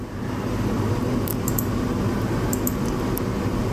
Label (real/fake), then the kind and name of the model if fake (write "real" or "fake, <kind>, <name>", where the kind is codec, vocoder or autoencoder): real